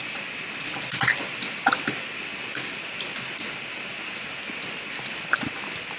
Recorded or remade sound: recorded